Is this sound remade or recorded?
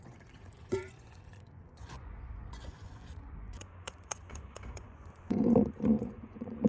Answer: remade